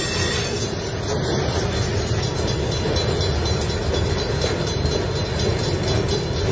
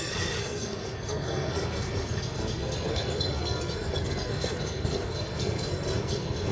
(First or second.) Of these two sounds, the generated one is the second